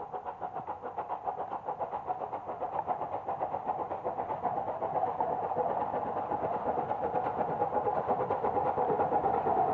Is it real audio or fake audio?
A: real